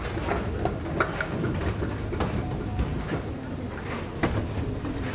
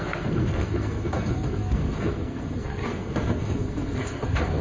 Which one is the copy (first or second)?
second